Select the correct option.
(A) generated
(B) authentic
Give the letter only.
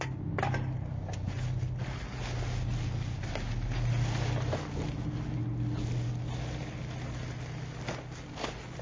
B